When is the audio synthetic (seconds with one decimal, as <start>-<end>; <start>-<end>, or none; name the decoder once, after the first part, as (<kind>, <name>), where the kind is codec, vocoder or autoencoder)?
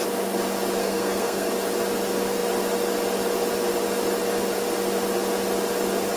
0.8-1.5 (codec, SNAC)